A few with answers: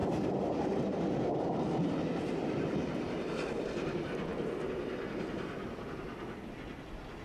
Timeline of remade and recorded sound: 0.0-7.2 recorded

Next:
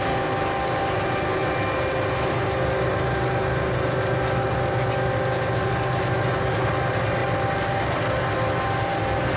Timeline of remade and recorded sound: 0.0-9.4 recorded

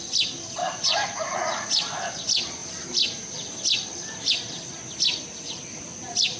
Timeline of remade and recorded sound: 0.0-0.6 recorded; 0.6-1.8 remade; 1.8-6.4 recorded